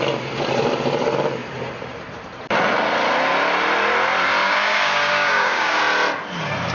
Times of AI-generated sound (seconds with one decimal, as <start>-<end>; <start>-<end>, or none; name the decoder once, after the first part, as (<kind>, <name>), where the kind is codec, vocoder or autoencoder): 4.4-5.8 (codec, DAC)